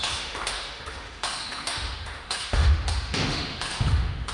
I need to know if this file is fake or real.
fake